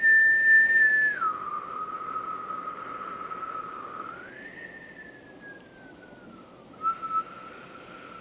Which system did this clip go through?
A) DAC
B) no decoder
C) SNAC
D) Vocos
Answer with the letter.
B